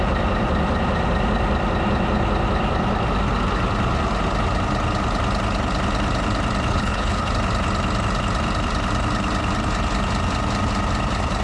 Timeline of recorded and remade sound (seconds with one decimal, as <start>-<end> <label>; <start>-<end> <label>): 0.0-6.7 recorded; 6.7-7.3 remade; 7.3-11.4 recorded